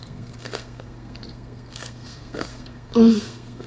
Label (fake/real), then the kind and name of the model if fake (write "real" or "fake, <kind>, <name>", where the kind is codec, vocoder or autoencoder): fake, codec, SNAC